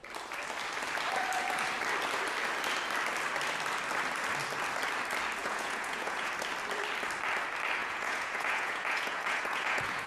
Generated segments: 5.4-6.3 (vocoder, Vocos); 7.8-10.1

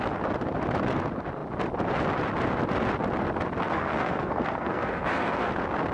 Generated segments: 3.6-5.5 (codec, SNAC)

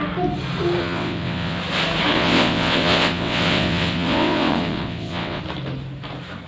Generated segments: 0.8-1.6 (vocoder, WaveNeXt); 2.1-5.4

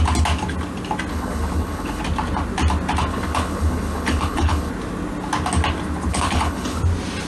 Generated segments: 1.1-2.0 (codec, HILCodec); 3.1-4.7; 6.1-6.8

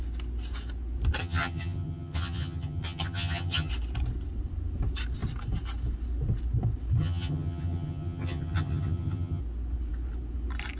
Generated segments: 1.2-3.7 (vocoder, HiFi-GAN); 7.0-9.4